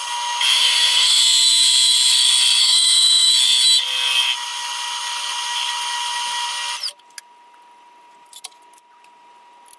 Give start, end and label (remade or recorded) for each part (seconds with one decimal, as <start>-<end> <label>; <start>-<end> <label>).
0.0-0.5 recorded; 0.5-1.2 remade; 1.2-2.6 recorded; 2.6-3.3 remade; 3.3-9.8 recorded